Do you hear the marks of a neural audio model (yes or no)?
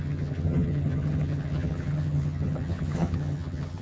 yes